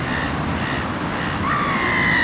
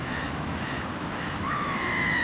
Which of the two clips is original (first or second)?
first